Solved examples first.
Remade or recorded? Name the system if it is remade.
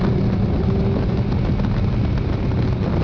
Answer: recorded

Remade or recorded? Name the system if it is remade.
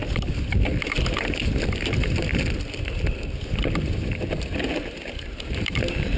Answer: recorded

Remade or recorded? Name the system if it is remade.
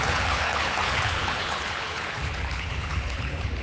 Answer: remade, codec, HILCodec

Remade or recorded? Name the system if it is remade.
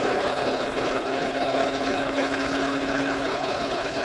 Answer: remade, codec, HILCodec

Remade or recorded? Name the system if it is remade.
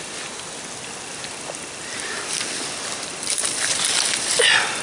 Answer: recorded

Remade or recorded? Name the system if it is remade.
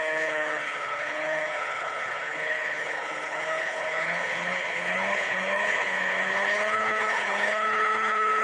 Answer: remade, codec, HILCodec